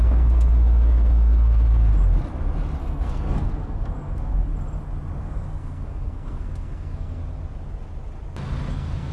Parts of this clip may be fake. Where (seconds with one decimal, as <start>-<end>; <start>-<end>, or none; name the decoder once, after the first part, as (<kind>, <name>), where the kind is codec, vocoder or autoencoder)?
0.0-1.9 (codec, SNAC); 2.8-4.5; 5.2-7.2; 8.7-9.1